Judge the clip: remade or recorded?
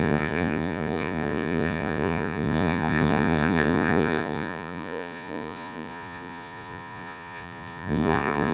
remade